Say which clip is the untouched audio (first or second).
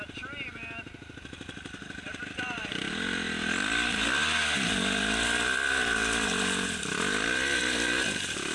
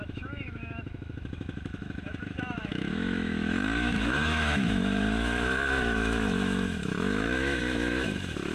first